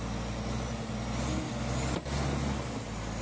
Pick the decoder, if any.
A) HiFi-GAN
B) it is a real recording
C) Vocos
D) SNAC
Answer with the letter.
B